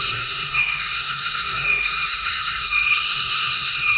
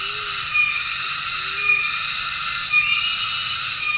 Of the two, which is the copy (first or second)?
first